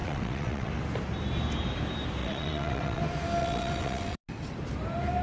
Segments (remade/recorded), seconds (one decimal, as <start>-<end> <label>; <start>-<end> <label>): 0.0-0.7 remade; 0.7-2.2 recorded; 2.2-3.0 remade; 3.0-3.4 recorded; 3.4-4.2 remade; 4.2-5.2 recorded